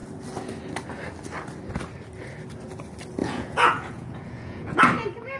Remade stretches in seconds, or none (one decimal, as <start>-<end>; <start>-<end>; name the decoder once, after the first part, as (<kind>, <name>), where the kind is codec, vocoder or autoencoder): 3.2-4.8 (vocoder, Vocos)